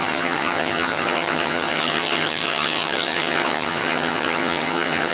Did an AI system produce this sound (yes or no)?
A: yes